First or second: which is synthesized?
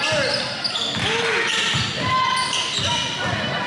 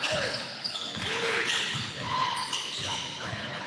second